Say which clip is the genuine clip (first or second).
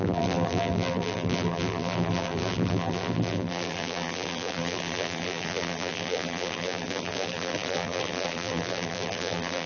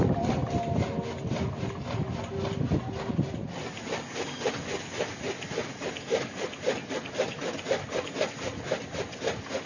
second